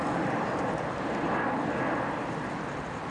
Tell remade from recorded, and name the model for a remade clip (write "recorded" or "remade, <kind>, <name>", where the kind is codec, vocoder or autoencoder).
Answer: recorded